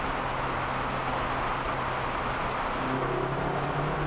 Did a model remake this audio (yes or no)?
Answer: no